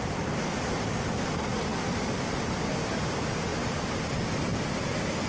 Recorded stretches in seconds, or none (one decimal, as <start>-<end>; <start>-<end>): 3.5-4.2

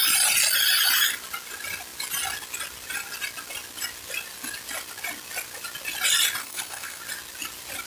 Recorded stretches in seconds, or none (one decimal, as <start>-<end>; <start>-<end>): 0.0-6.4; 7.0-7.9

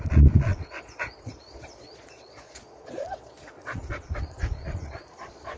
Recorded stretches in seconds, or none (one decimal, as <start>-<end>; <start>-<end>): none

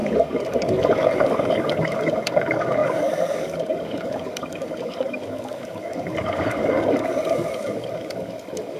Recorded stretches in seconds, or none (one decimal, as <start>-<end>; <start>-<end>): none

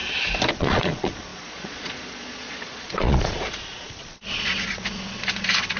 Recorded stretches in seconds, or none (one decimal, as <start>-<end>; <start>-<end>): 0.0-0.5

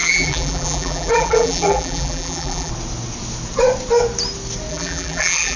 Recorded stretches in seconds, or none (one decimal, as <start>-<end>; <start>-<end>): 2.7-4.7

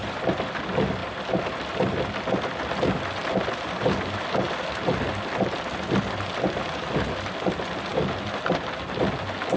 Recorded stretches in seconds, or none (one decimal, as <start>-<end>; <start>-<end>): 0.0-9.6